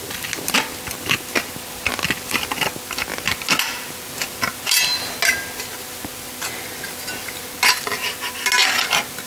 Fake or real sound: real